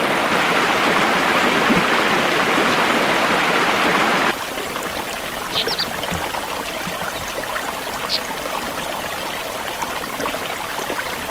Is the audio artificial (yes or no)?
no